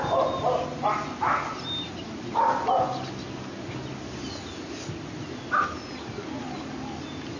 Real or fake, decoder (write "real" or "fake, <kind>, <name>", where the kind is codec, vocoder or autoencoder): real